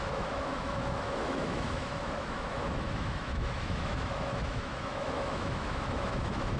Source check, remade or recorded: remade